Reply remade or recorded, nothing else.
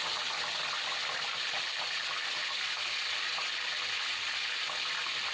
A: recorded